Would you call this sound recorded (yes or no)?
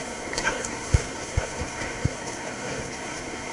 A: no